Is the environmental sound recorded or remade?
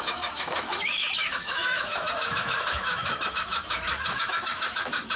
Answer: remade